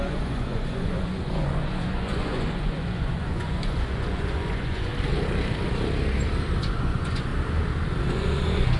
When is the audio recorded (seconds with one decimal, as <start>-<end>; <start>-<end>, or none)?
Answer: 4.9-6.6; 7.3-8.0

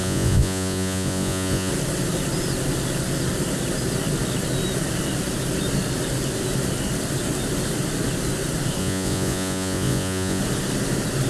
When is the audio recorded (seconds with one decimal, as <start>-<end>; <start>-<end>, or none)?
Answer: 1.7-8.8; 10.4-11.3

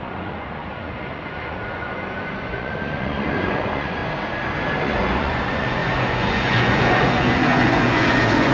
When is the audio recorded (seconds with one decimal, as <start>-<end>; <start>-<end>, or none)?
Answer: 4.0-4.8

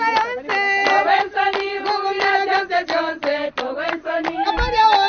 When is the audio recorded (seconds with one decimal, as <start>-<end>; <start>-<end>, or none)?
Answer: 0.0-5.1

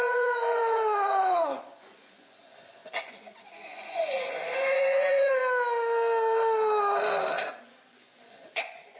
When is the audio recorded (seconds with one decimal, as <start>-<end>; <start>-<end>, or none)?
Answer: 5.4-7.6

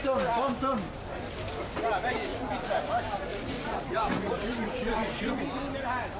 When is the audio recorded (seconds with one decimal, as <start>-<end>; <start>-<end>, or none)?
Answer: 0.0-2.3; 2.8-3.3; 5.4-6.2

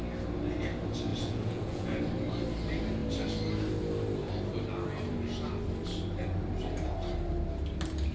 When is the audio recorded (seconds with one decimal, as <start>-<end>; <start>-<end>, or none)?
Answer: 0.0-1.1; 2.0-8.1

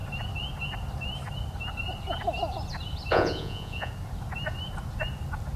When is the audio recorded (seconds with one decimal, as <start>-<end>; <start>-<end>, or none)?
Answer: 0.0-3.1; 3.9-5.6